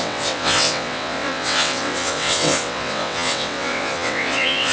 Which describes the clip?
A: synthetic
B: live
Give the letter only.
A